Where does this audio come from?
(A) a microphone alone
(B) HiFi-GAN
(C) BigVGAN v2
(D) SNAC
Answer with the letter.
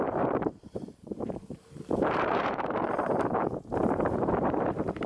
C